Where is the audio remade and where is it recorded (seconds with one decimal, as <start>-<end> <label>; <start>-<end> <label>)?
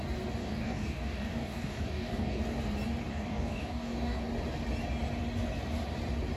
0.0-0.4 recorded; 0.4-2.4 remade; 2.4-3.1 recorded; 3.1-4.2 remade; 4.2-6.4 recorded